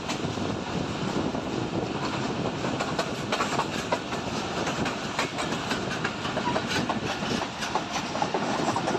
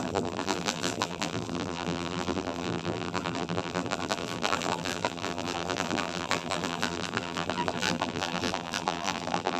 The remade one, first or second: second